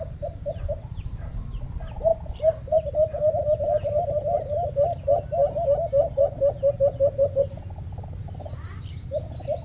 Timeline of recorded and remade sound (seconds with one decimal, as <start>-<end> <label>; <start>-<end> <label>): 0.0-9.6 recorded